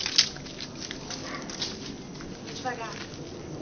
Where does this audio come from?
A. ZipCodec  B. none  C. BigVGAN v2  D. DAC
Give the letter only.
B